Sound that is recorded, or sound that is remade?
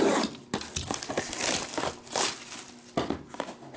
recorded